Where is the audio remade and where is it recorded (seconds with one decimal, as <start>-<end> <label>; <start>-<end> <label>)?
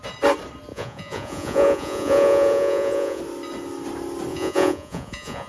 0.0-0.7 recorded; 0.7-3.2 remade; 3.2-4.3 recorded; 4.3-5.5 remade